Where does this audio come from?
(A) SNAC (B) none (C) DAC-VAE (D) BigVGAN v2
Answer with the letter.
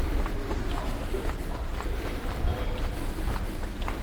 B